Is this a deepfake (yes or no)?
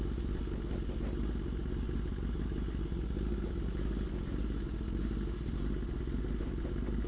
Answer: no